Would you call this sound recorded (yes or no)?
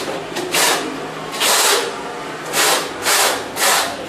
yes